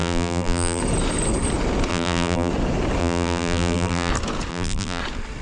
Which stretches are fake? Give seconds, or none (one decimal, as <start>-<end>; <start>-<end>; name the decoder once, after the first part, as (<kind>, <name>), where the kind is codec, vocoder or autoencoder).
0.0-0.8 (vocoder, BigVGAN v2); 1.9-2.5; 3.0-4.1; 4.5-5.0